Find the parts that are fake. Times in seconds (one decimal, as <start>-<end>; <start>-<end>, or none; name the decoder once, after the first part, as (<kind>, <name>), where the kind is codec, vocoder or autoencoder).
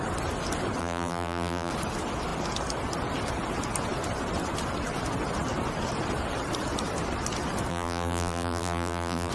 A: 0.8-1.7 (vocoder, BigVGAN v2); 7.7-9.3